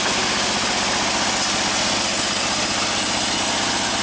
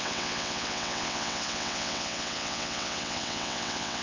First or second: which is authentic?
first